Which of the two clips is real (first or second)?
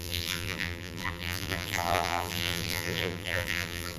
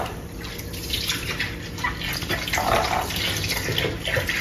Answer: second